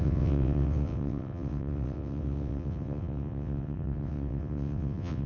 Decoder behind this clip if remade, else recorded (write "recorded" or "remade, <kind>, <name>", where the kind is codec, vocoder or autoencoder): remade, vocoder, WaveNeXt